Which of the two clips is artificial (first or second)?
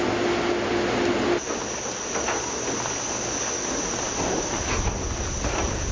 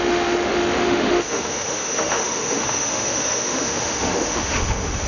second